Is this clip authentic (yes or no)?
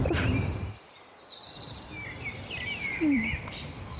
no